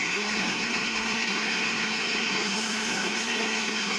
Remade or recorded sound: remade